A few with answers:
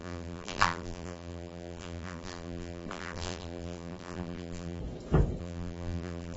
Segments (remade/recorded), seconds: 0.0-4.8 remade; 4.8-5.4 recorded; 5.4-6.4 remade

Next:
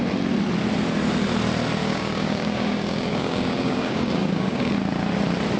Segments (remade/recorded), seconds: 0.0-1.8 recorded; 1.8-4.7 remade; 4.7-5.6 recorded

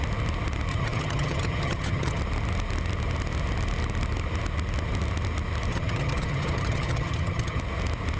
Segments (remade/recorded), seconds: 0.0-0.7 recorded; 0.7-2.2 remade; 2.2-5.7 recorded; 5.7-7.6 remade; 7.6-8.2 recorded

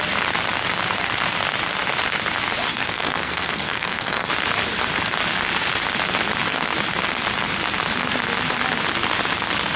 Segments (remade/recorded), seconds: 0.0-2.7 recorded; 2.7-4.3 remade; 4.3-9.8 recorded